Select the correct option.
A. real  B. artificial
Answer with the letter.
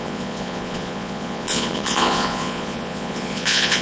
B